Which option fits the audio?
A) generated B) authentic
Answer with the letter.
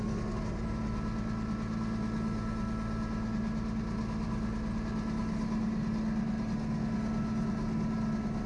B